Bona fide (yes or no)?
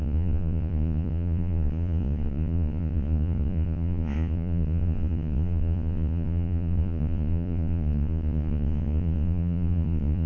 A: no